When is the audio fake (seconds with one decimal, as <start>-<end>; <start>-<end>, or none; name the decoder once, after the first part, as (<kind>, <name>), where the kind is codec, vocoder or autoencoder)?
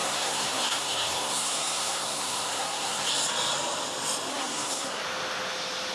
0.0-3.1 (codec, SNAC); 4.3-5.0